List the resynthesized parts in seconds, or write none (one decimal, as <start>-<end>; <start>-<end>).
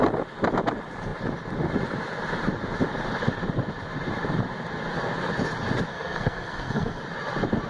5.9-7.0